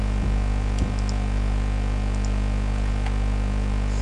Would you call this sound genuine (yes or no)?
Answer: yes